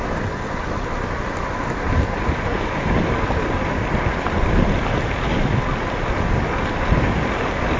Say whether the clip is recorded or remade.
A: recorded